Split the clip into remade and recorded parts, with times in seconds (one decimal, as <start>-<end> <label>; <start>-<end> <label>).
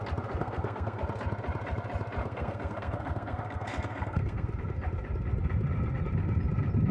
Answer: 0.0-0.4 recorded; 0.4-1.0 remade; 1.0-2.2 recorded; 2.2-4.5 remade; 4.5-6.9 recorded